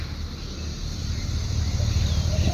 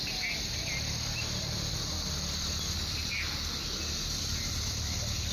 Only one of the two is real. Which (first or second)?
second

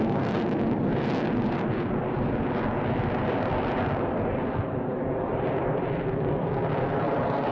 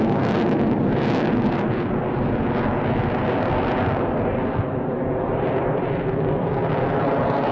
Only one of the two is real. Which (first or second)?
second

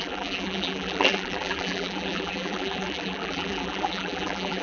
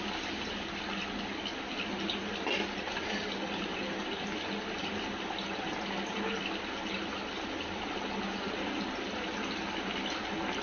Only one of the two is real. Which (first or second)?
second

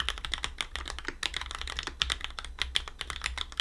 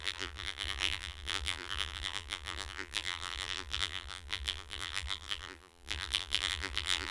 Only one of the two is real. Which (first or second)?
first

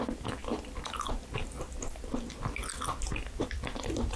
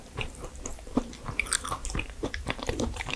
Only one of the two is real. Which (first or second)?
first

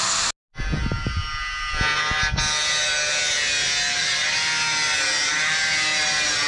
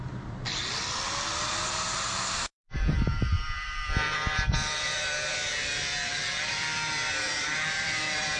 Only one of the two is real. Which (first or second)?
first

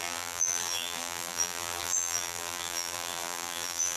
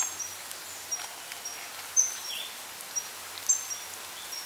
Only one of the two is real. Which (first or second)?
second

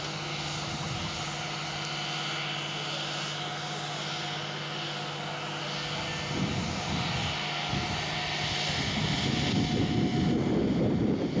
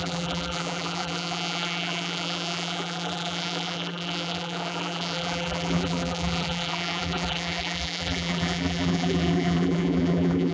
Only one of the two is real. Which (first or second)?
first